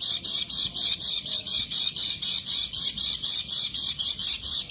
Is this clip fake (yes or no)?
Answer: yes